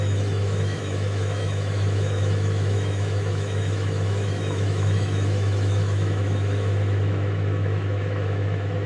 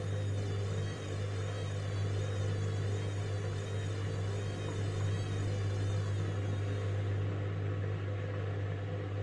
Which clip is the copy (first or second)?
first